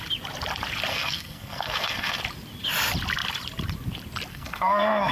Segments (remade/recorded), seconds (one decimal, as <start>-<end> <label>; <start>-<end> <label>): 0.0-0.9 recorded; 0.9-2.2 remade; 2.2-4.3 recorded; 4.3-5.1 remade